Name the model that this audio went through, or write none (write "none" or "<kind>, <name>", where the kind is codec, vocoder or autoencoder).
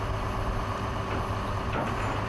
none